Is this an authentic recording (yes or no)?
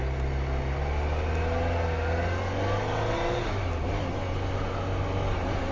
yes